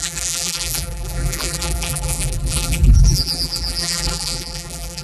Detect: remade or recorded remade